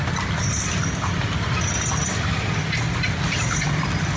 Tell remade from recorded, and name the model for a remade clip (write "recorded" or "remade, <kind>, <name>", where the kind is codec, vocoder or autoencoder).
recorded